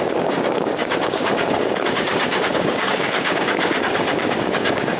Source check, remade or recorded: remade